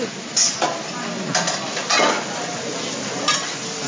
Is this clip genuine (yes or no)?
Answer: yes